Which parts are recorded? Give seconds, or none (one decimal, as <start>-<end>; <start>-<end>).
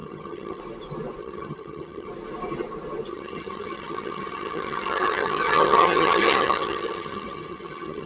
0.6-1.2; 2.1-3.1